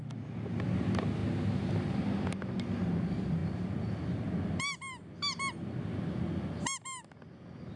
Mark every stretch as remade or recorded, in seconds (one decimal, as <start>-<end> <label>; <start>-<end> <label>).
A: 0.0-7.8 recorded

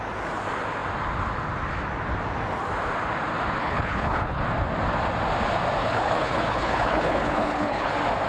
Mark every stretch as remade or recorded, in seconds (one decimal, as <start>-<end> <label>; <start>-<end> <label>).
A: 0.0-3.6 recorded; 3.6-4.4 remade; 4.4-5.8 recorded; 5.8-7.9 remade; 7.9-8.3 recorded